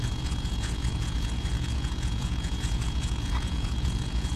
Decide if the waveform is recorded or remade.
remade